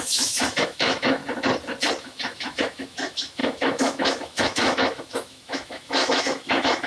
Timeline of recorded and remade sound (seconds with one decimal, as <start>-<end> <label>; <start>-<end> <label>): 0.0-1.2 remade; 1.2-2.0 recorded; 2.0-6.9 remade